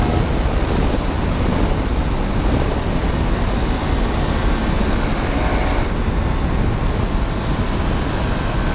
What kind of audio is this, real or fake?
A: real